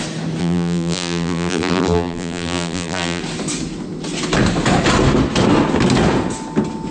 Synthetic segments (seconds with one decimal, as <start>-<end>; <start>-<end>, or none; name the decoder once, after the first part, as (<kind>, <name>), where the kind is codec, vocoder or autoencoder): 0.4-3.2 (vocoder, BigVGAN v2)